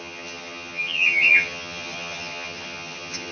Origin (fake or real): fake